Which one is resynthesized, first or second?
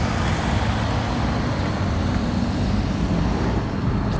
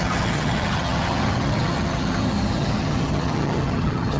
second